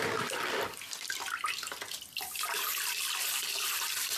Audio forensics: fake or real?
real